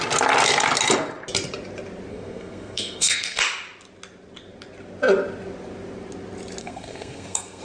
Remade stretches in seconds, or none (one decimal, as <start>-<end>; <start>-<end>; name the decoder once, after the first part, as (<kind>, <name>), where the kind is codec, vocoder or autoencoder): 2.1-3.4 (codec, SNAC); 6.6-7.6